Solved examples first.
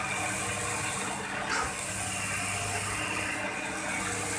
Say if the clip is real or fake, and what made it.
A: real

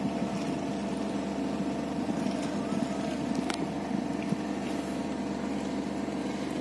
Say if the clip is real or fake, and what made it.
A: real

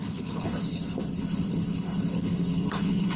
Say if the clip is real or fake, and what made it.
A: fake, codec, HILCodec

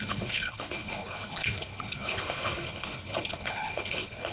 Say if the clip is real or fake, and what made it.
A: fake, codec, HILCodec